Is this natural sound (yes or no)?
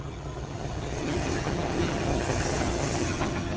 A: no